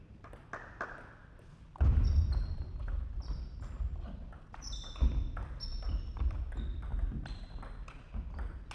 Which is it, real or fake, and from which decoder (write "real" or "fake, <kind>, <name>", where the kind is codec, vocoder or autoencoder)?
real